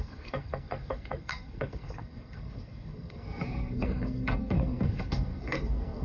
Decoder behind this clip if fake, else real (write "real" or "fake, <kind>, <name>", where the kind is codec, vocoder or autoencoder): fake, codec, SNAC